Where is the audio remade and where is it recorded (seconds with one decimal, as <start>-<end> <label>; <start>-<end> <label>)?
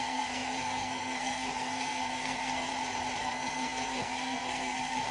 0.0-2.7 remade; 2.7-3.2 recorded; 3.2-5.1 remade